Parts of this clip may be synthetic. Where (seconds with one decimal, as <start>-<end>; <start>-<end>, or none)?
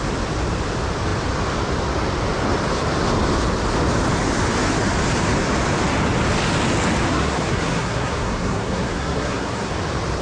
7.1-9.7